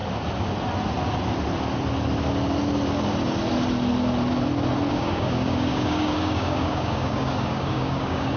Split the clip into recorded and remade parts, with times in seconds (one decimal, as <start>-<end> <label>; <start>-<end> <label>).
0.0-4.9 recorded; 4.9-8.4 remade